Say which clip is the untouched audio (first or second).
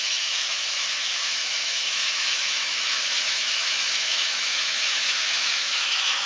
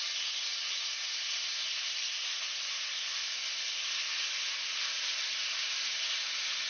second